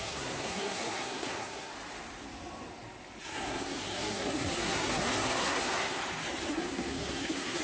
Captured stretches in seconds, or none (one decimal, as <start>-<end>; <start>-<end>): 1.7-3.2; 6.0-6.5